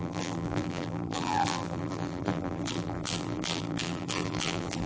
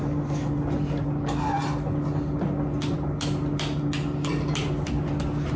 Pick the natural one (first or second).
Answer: second